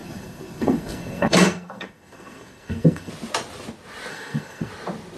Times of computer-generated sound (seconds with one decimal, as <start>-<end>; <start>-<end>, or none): 0.0-3.1; 4.1-4.7